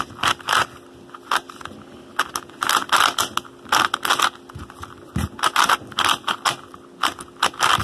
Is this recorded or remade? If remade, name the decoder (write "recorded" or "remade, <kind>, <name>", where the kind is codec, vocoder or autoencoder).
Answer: recorded